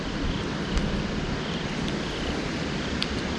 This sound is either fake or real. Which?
real